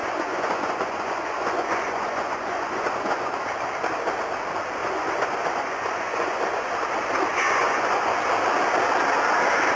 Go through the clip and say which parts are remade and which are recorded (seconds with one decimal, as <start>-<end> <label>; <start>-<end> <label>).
0.0-3.3 remade; 3.3-4.8 recorded; 4.8-6.7 remade; 6.7-7.3 recorded; 7.3-8.1 remade; 8.1-9.8 recorded